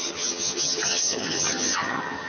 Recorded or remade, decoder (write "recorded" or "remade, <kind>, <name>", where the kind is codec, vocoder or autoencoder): remade, vocoder, HiFi-GAN